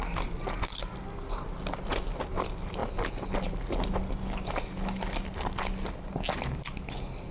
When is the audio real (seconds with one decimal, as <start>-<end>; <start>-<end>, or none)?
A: 0.0-7.3